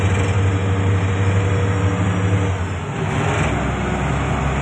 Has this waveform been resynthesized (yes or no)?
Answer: no